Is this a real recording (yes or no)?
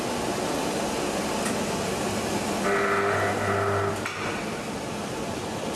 yes